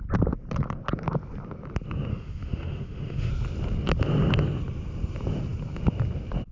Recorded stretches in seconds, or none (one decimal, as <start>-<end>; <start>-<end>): 0.0-2.1; 3.3-6.5